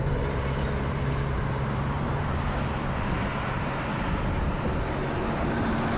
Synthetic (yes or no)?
yes